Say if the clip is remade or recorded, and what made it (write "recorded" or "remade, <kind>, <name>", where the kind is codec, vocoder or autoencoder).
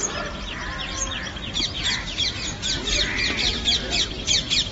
recorded